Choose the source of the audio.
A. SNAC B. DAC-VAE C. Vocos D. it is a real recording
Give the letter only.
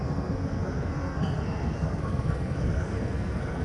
A